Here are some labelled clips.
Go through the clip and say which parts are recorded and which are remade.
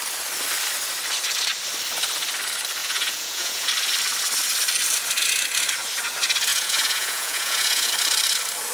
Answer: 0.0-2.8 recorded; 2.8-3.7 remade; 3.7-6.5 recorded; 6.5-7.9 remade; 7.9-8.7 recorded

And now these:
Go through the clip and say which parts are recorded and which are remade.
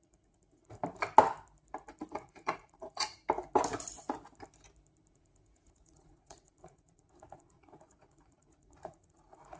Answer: 0.0-0.8 remade; 0.8-2.1 recorded; 2.1-3.2 remade; 3.2-5.1 recorded; 5.1-9.6 remade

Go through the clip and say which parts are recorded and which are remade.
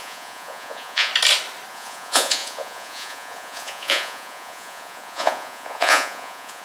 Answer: 0.0-1.1 remade; 1.1-1.7 recorded; 1.7-6.6 remade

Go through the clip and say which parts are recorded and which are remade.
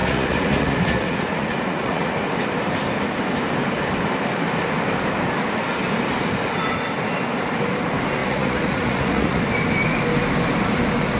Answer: 0.0-2.1 remade; 2.1-8.2 recorded; 8.2-9.4 remade; 9.4-11.2 recorded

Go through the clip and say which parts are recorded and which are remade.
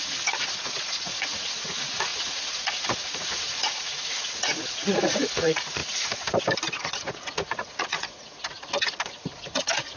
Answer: 0.0-5.8 remade; 5.8-6.7 recorded; 6.7-10.0 remade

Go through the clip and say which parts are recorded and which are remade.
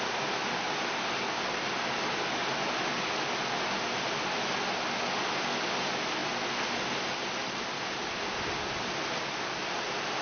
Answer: 0.0-10.2 recorded